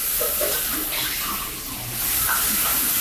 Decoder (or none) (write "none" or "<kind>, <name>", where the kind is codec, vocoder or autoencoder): none